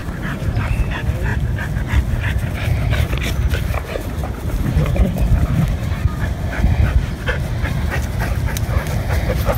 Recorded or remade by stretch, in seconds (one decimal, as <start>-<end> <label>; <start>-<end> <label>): 0.0-0.9 remade; 0.9-9.6 recorded